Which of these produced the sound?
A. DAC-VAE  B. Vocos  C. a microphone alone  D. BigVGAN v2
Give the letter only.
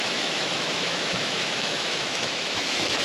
A